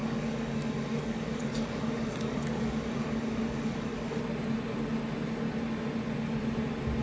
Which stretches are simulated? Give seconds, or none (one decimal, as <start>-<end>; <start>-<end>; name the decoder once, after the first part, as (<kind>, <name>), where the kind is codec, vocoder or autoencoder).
0.0-4.2 (codec, DAC)